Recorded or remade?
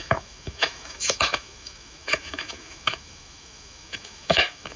remade